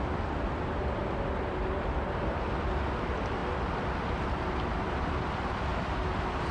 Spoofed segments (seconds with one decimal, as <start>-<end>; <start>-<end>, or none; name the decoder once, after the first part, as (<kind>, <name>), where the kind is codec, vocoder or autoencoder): 0.0-1.0 (vocoder, BigVGAN v2); 1.8-3.4; 4.1-5.7